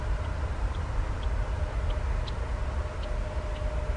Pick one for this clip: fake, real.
real